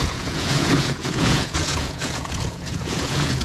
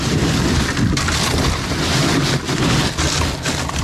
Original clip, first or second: second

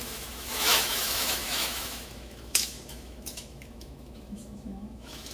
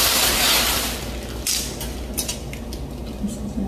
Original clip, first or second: second